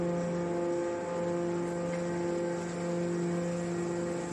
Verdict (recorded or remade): recorded